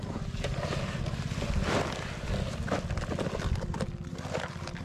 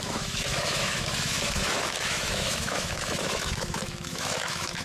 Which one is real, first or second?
first